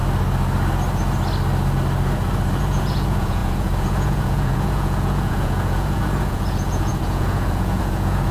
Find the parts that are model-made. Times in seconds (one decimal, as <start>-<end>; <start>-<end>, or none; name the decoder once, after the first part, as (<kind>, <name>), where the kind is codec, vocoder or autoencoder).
2.6-8.3 (vocoder, Vocos)